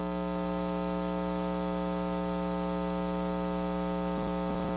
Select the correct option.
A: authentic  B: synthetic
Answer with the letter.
A